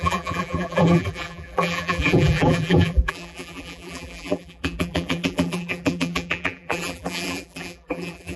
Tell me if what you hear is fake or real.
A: fake